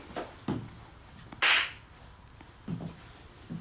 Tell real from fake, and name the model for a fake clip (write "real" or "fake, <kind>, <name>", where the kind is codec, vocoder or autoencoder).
real